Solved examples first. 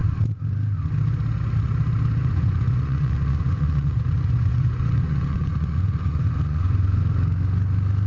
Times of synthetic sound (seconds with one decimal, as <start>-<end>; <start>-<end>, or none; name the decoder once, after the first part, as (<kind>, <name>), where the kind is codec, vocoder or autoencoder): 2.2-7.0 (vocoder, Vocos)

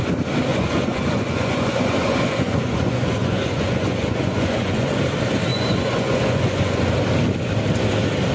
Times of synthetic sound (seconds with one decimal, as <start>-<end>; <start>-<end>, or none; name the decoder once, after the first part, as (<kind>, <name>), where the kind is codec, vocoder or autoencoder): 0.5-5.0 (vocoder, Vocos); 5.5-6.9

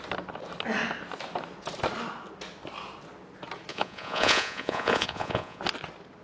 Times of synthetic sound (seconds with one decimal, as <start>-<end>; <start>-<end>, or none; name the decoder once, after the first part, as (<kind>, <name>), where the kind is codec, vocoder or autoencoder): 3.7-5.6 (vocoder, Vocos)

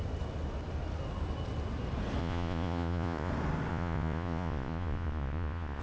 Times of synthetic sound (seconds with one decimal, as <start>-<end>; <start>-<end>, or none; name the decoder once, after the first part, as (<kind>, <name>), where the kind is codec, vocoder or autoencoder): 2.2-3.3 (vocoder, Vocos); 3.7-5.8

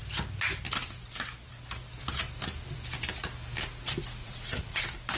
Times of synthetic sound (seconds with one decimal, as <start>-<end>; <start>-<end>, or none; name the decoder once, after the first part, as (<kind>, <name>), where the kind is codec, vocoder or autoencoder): 4.2-4.8 (vocoder, Vocos)